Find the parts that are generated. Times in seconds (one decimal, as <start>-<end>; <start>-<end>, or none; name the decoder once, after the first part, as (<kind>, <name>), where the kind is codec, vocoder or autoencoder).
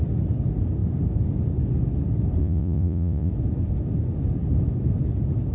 2.4-3.3 (vocoder, Vocos)